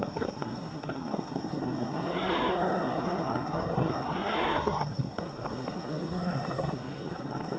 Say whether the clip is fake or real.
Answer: fake